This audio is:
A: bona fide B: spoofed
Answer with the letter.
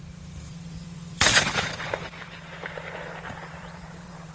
B